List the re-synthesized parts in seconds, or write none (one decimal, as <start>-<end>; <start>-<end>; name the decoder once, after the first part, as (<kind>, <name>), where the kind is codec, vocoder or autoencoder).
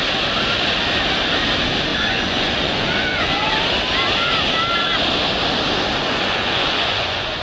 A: 1.9-3.5 (vocoder, Vocos); 6.0-7.4